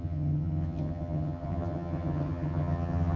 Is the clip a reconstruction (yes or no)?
yes